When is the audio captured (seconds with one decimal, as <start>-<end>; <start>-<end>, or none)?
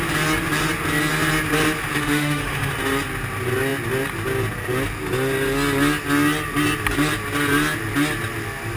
0.0-1.9; 2.7-8.8